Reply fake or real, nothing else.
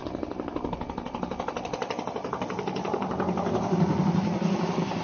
real